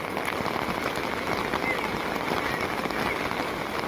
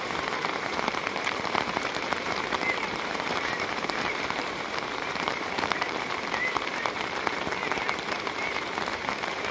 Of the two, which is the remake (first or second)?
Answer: second